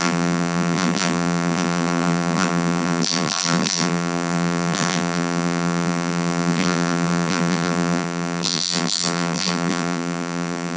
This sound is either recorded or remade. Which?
remade